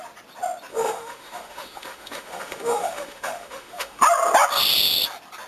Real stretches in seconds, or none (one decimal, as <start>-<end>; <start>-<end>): 0.0-0.7; 4.0-5.5